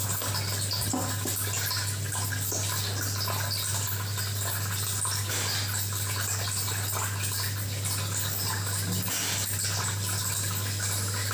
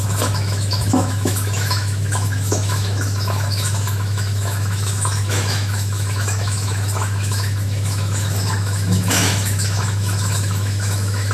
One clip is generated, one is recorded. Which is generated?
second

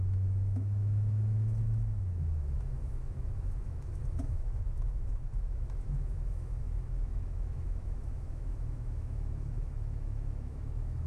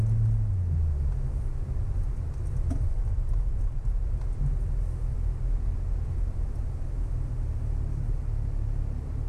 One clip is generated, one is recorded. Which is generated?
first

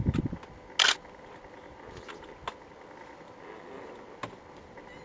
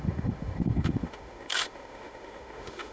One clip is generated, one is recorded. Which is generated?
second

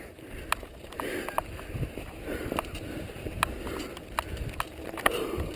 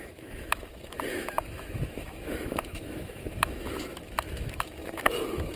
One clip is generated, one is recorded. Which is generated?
second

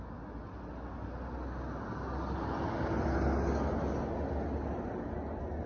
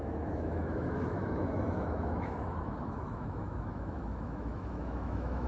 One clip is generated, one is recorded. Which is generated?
second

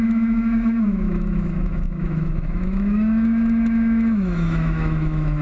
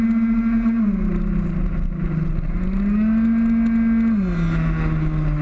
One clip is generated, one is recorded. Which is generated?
first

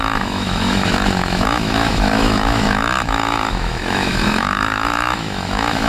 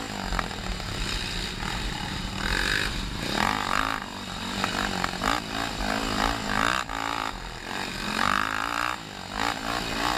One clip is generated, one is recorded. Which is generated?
first